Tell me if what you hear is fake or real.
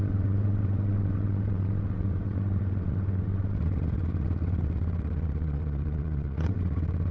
fake